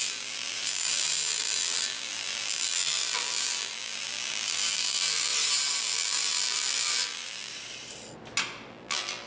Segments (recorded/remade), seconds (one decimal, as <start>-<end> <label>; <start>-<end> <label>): 0.0-5.3 remade; 5.3-5.8 recorded; 5.8-7.5 remade; 7.5-8.7 recorded; 8.7-9.3 remade